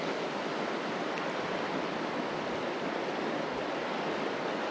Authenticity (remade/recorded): recorded